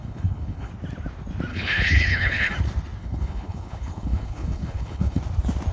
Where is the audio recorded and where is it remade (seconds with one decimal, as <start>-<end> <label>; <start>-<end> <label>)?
0.0-0.7 remade; 0.7-1.5 recorded; 1.5-2.5 remade; 2.5-3.0 recorded; 3.0-5.2 remade; 5.2-5.7 recorded